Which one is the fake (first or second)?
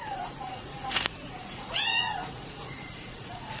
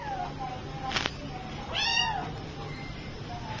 first